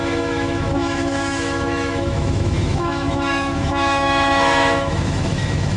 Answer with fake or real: fake